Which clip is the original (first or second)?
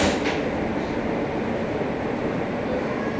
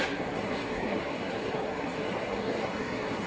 first